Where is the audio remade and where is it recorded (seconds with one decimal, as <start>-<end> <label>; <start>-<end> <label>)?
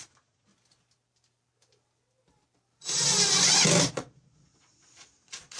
0.0-0.5 remade; 0.5-3.9 recorded; 3.9-5.6 remade